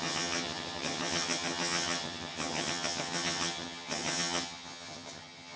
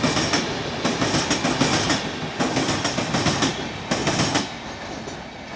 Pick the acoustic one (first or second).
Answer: second